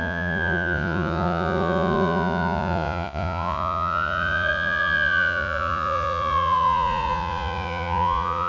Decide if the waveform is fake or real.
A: fake